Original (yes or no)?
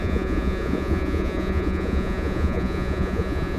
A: no